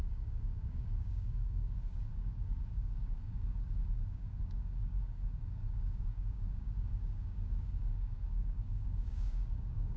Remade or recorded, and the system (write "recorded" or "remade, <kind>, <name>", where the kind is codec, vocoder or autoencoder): remade, codec, DAC